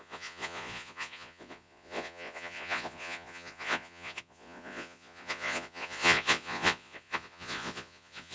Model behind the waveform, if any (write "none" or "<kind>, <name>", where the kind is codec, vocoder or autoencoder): vocoder, Vocos